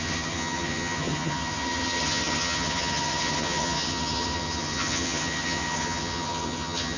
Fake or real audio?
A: fake